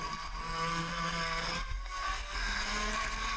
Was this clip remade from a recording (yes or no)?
yes